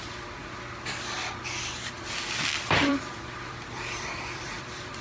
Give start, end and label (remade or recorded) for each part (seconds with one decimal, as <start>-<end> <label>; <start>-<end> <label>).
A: 0.0-0.4 remade; 0.4-2.9 recorded; 2.9-5.0 remade